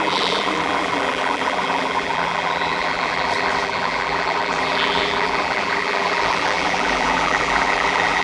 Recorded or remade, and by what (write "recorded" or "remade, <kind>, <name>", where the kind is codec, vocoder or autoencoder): remade, vocoder, BigVGAN v2